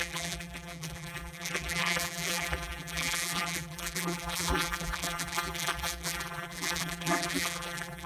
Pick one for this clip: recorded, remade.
remade